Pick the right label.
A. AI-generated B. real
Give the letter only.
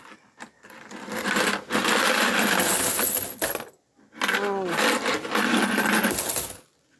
B